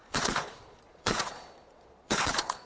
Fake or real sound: fake